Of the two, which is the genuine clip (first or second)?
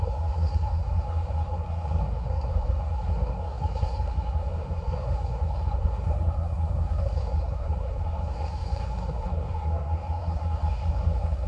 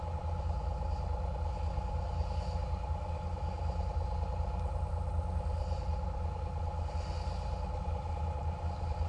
second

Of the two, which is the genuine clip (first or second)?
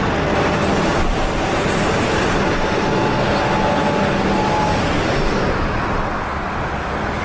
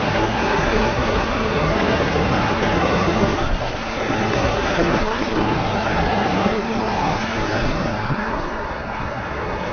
first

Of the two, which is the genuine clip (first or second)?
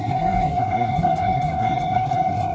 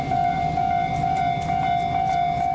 second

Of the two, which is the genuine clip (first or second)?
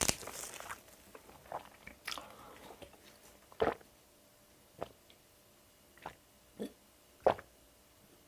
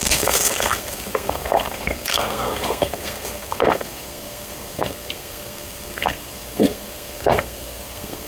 first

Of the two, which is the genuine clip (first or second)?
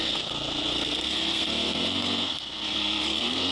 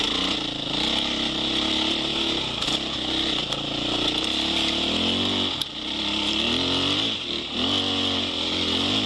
second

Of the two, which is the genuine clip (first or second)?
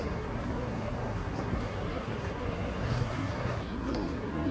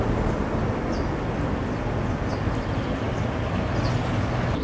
second